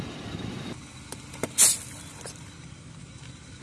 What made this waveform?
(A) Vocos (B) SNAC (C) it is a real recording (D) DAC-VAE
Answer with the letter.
C